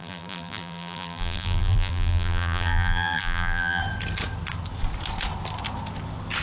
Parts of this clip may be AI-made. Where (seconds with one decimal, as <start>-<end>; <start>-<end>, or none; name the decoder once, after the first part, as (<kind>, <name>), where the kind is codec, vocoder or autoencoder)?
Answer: 0.0-3.8 (vocoder, BigVGAN v2)